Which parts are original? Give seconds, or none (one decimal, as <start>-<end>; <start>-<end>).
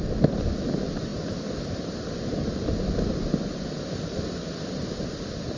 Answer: 0.0-5.6